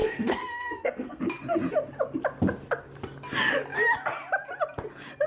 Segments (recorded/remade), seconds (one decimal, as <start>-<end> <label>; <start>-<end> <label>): 0.0-1.2 remade; 1.2-5.3 recorded

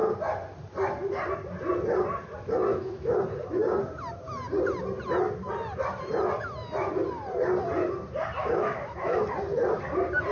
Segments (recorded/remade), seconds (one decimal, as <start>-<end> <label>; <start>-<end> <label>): 0.0-2.7 recorded; 2.7-3.2 remade; 3.2-8.4 recorded; 8.4-9.2 remade; 9.2-10.3 recorded